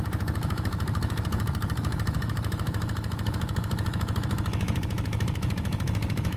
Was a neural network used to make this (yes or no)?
yes